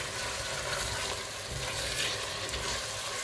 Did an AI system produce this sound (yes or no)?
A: no